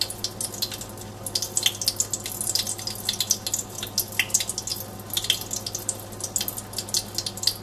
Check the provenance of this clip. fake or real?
real